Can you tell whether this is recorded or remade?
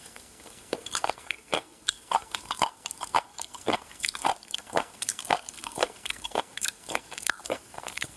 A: remade